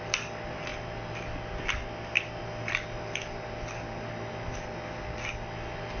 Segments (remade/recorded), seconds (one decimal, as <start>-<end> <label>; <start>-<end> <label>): 0.0-6.0 recorded